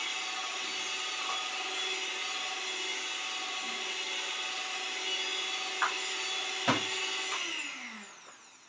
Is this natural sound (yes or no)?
yes